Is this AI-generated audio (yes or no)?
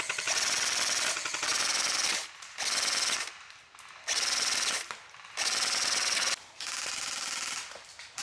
no